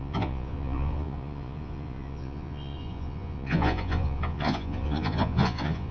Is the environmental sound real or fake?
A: fake